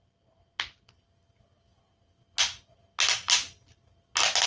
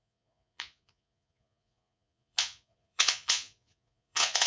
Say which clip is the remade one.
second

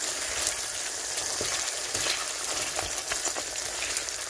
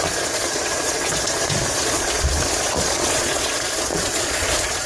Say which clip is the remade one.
second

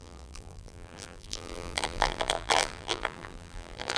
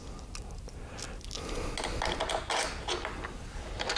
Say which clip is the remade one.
first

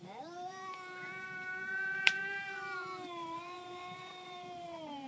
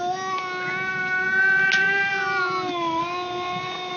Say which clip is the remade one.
first